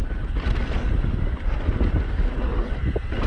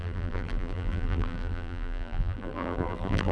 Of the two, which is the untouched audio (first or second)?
first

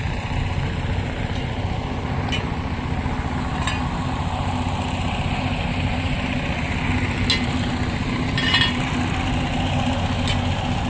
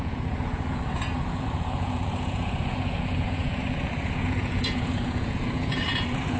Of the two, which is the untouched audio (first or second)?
first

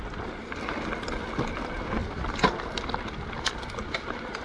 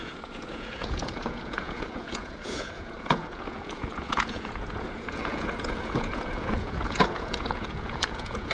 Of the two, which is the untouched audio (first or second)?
first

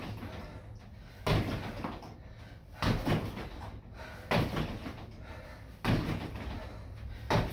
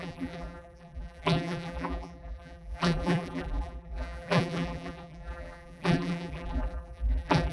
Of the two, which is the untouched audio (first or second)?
first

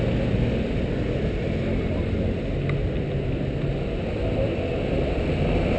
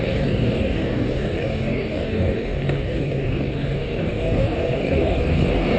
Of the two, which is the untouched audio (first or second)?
first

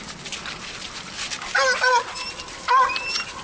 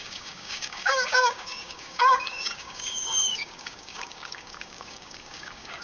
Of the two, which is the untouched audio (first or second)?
first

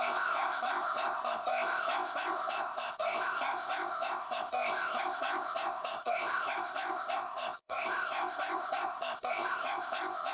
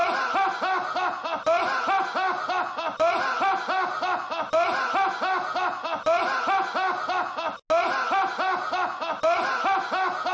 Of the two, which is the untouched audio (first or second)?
second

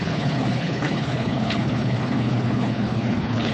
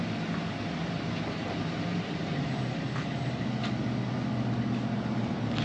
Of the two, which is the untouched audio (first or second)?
second